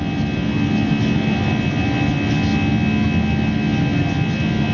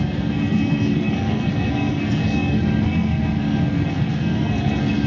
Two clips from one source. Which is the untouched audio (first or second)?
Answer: first